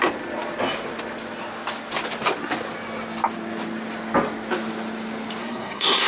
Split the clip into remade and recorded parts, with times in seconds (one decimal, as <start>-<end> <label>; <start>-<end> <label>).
0.0-5.4 recorded; 5.4-6.1 remade